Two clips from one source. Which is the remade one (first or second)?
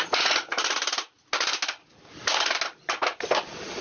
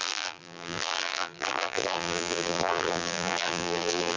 second